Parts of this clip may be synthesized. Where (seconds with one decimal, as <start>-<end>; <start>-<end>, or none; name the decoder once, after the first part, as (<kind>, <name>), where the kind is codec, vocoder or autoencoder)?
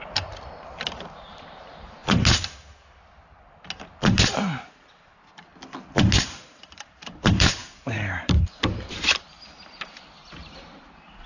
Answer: 0.0-2.0 (vocoder, BigVGAN v2); 4.3-5.5; 6.2-11.3